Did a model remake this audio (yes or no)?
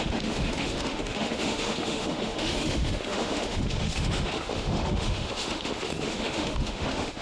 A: yes